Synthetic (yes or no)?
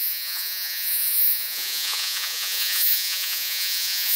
yes